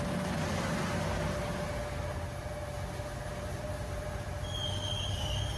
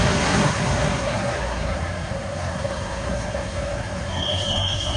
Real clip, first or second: first